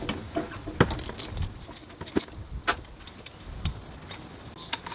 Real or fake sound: real